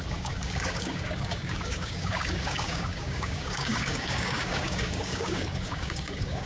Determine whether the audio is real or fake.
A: fake